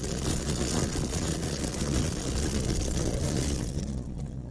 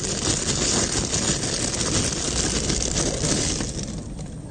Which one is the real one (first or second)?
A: second